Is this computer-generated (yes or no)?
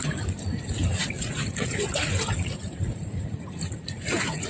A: yes